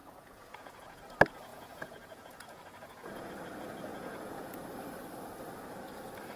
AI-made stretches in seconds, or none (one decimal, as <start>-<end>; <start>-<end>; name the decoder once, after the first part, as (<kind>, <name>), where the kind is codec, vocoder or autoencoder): 0.0-1.0 (vocoder, Vocos); 1.5-3.3; 3.9-4.6